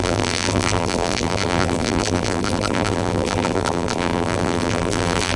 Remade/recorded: remade